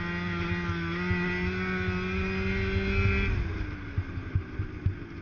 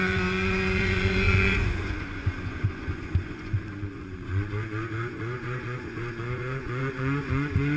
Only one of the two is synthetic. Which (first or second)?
second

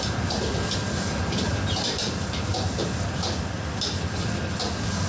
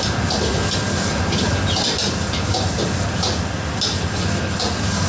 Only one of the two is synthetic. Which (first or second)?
first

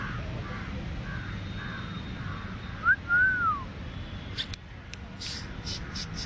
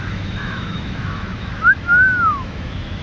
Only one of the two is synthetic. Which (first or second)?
second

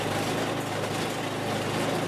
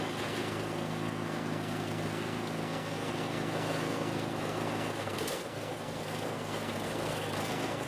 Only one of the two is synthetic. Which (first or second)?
second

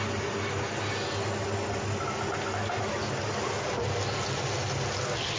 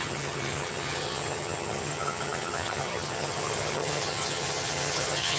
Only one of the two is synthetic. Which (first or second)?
second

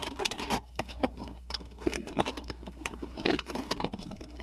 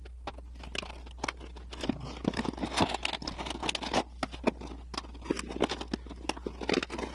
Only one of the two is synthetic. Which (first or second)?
first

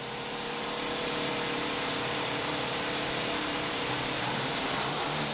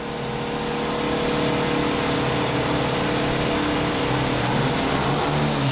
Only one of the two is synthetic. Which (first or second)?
first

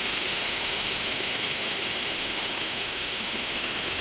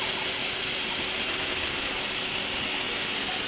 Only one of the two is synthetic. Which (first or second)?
first